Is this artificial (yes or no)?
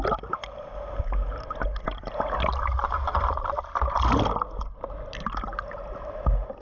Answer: no